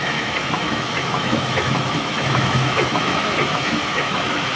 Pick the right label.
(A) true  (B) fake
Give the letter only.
B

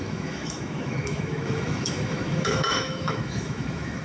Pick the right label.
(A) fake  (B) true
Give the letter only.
A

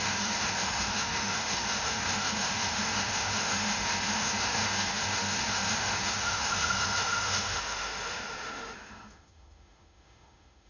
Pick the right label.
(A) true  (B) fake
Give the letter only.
B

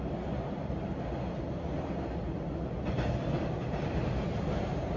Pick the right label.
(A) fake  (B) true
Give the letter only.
B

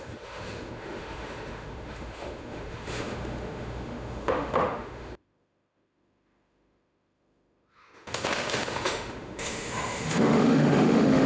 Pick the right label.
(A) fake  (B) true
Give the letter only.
A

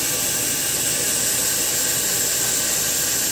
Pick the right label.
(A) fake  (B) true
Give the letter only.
B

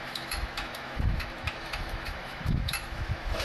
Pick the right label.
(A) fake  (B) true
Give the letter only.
A